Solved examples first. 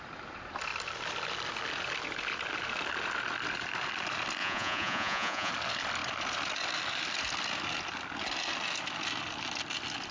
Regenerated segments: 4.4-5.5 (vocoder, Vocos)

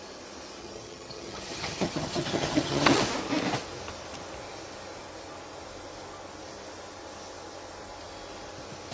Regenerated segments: 0.6-3.0 (vocoder, HiFi-GAN)

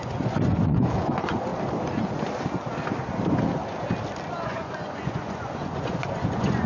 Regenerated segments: 0.0-1.5 (vocoder, Vocos); 4.3-6.7

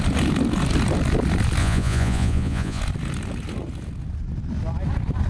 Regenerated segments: 1.6-2.8 (vocoder, Vocos)